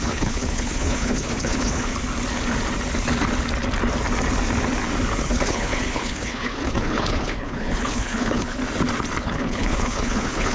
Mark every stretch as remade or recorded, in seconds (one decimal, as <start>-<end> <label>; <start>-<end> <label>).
0.0-1.9 remade; 1.9-5.3 recorded; 5.3-8.6 remade; 8.6-9.2 recorded; 9.2-10.5 remade